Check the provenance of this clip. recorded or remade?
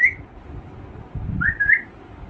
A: recorded